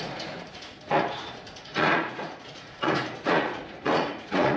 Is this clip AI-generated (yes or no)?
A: yes